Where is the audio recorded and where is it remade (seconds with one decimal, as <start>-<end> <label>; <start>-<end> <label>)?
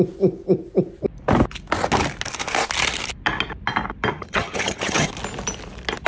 0.0-4.1 recorded; 4.1-5.1 remade; 5.1-6.1 recorded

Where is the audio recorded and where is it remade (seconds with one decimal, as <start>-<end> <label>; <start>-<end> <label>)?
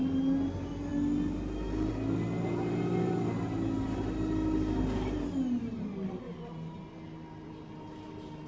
0.0-8.5 recorded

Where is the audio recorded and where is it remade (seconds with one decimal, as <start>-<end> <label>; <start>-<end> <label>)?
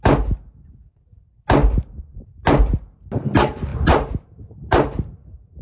0.0-5.6 recorded